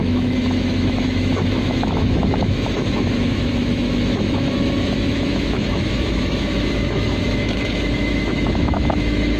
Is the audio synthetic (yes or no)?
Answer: yes